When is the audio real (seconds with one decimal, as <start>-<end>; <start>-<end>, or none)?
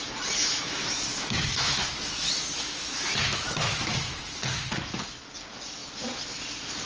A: 0.0-0.4; 4.3-6.9